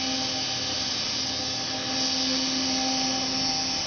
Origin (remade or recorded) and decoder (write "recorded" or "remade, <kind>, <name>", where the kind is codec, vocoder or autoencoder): recorded